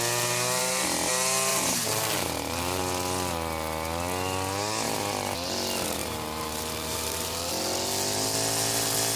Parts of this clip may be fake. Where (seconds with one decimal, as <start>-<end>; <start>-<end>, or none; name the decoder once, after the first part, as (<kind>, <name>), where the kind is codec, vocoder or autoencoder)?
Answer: 1.5-2.8 (vocoder, BigVGAN v2); 6.0-7.5